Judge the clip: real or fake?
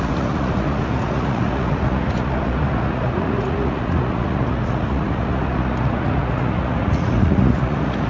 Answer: fake